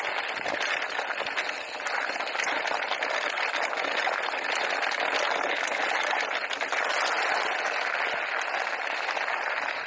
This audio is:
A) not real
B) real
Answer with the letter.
B